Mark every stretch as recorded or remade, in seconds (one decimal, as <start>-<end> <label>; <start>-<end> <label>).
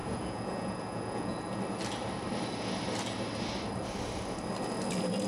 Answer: 0.0-1.6 remade; 1.6-5.3 recorded